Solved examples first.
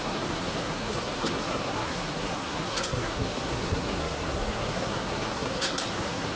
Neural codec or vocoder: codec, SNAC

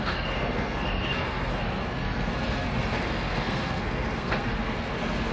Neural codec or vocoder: codec, SNAC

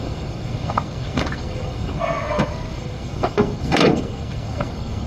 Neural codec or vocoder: codec, SNAC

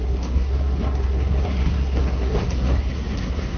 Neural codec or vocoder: codec, SNAC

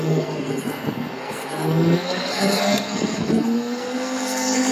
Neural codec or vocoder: codec, SNAC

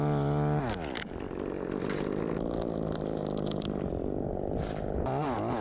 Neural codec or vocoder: none